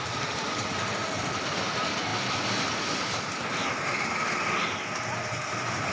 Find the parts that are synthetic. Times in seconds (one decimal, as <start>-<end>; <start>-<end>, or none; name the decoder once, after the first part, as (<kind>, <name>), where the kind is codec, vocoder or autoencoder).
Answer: none